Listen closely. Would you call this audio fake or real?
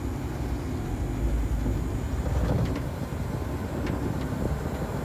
real